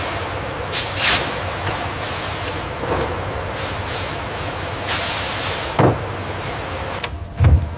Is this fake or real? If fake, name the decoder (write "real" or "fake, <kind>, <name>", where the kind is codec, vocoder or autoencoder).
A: real